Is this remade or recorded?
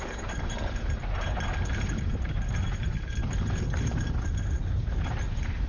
remade